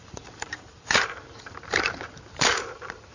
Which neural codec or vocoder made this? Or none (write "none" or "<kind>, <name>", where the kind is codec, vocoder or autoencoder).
vocoder, BigVGAN v2